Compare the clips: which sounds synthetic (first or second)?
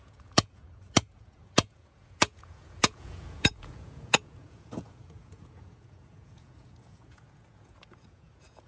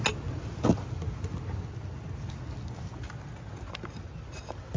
first